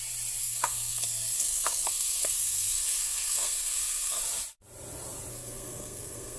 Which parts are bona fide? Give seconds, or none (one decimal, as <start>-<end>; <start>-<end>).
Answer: 0.0-0.4; 4.2-5.3